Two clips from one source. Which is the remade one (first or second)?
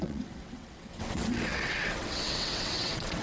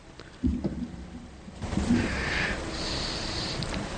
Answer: first